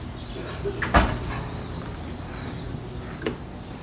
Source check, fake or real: real